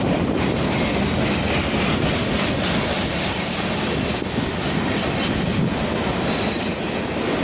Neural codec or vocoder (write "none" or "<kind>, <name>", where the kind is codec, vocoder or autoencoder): none